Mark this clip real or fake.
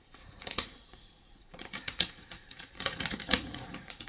fake